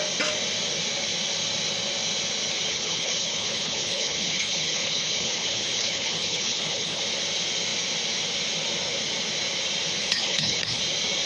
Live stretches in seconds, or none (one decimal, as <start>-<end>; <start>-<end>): 0.0-2.7; 7.0-10.0; 10.8-11.3